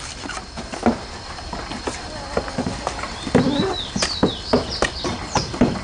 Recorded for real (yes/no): yes